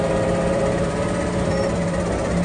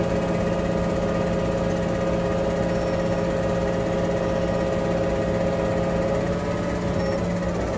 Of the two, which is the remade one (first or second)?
first